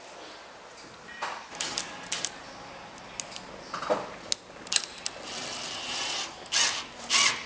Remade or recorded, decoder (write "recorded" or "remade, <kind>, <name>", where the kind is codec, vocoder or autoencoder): recorded